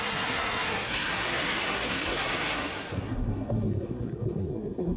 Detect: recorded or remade remade